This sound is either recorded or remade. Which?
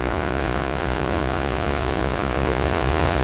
remade